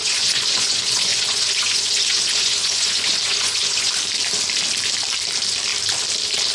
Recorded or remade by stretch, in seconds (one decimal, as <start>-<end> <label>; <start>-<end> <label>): 0.0-3.9 remade; 3.9-6.5 recorded